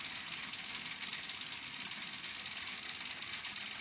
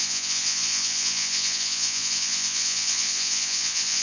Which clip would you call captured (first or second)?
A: first